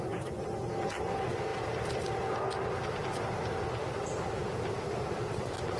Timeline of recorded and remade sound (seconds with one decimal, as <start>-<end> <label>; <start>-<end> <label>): 0.0-5.8 recorded